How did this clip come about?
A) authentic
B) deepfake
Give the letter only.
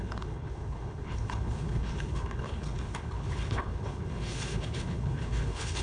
B